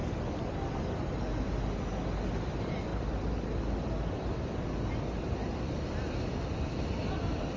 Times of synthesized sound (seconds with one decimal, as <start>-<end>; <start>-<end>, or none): none